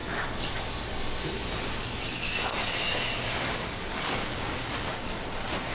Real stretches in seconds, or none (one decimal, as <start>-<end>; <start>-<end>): 0.5-1.8; 5.2-5.7